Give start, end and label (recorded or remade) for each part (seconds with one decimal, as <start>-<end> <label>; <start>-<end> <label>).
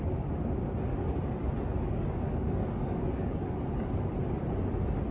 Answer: 0.0-0.9 recorded; 0.9-4.0 remade; 4.0-5.1 recorded